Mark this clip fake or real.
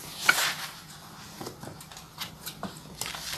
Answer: real